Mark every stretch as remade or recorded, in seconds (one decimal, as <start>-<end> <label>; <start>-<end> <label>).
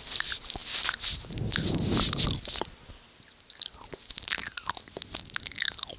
0.0-6.0 recorded